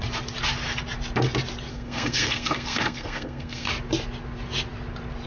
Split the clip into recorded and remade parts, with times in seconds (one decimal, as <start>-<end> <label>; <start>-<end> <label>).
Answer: 0.0-1.7 recorded; 1.7-3.7 remade; 3.7-5.3 recorded